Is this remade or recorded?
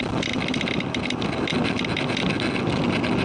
recorded